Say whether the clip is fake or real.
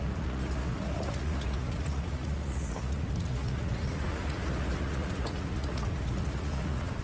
fake